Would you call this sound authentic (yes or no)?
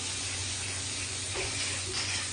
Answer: no